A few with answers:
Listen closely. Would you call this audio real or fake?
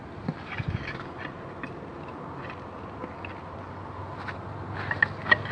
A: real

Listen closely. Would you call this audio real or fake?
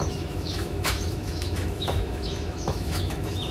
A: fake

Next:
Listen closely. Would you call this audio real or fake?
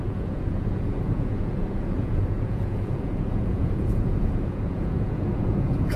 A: fake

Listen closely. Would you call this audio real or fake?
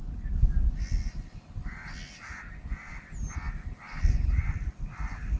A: real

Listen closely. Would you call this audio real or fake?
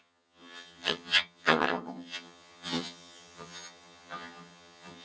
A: fake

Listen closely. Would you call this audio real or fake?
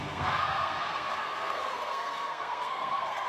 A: fake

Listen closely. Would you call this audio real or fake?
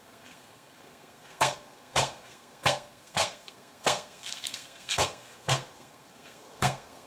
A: fake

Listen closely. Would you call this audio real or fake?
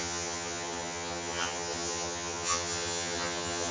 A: fake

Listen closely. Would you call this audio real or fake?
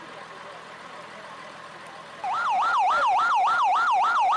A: real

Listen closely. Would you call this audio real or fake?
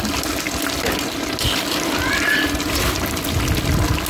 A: real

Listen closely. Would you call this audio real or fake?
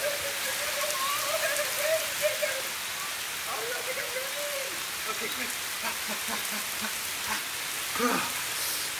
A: real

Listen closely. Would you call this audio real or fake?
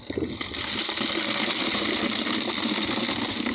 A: real